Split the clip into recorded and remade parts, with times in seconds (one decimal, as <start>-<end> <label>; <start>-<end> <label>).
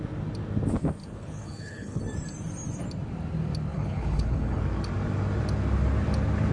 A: 0.0-1.0 recorded; 1.0-2.0 remade; 2.0-3.7 recorded; 3.7-4.6 remade; 4.6-6.5 recorded